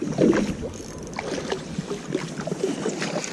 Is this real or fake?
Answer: real